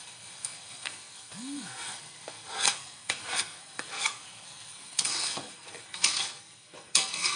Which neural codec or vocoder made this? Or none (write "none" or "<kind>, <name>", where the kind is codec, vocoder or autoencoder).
codec, SNAC